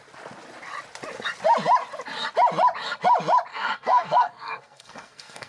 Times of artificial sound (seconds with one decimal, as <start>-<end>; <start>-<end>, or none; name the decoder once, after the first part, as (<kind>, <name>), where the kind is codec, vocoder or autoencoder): 3.5-5.5 (codec, SNAC)